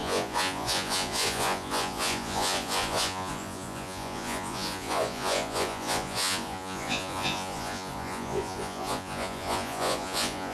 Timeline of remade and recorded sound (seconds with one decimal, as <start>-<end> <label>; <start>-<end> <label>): 0.0-10.5 remade